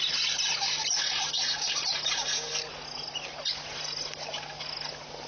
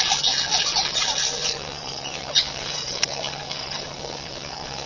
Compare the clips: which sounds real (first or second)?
first